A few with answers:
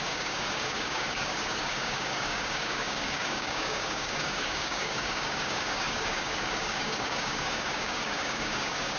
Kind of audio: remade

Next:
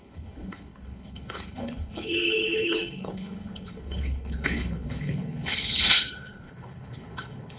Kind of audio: remade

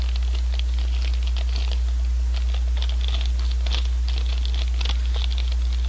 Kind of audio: recorded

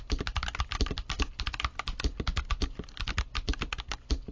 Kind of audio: recorded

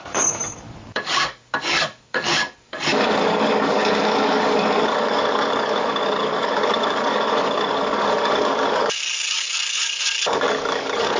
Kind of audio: remade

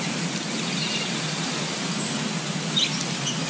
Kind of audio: recorded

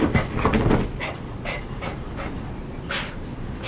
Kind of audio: remade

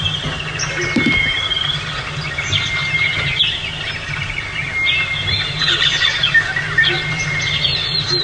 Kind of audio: recorded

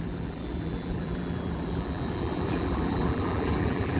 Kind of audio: remade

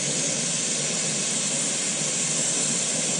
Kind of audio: recorded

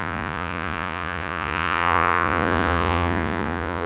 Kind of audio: remade